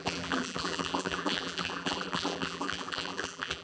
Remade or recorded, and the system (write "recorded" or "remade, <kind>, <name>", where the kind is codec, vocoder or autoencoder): remade, vocoder, BigVGAN v2